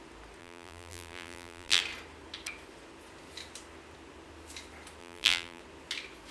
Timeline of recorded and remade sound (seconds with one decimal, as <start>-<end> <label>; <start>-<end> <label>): 0.0-0.4 recorded; 0.4-1.8 remade; 1.8-5.0 recorded; 5.0-5.6 remade; 5.6-6.3 recorded